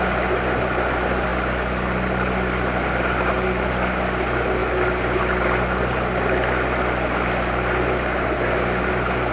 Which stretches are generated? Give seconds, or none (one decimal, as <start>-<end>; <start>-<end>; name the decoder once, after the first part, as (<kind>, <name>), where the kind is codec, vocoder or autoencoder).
none